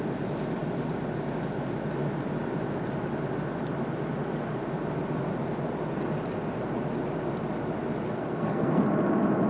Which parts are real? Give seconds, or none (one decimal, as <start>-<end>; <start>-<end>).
0.0-8.1; 8.8-9.5